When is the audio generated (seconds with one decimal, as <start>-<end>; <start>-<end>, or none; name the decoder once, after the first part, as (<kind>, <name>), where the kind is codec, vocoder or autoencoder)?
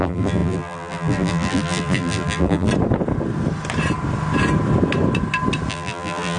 0.0-2.7 (vocoder, BigVGAN v2); 5.7-6.4